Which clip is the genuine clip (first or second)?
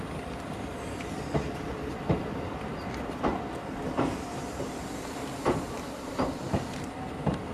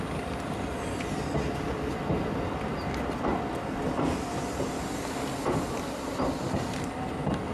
second